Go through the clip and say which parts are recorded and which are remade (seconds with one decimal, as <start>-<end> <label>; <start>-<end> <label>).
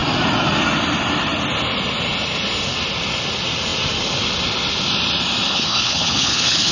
0.0-5.5 recorded; 5.5-6.7 remade